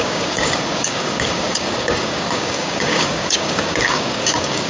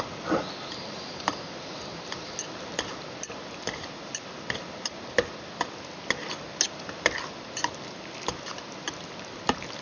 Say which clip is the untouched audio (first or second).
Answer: second